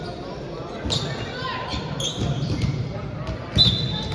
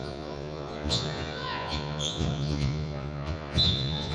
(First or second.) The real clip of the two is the first